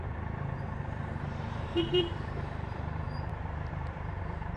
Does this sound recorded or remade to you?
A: remade